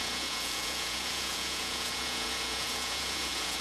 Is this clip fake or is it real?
fake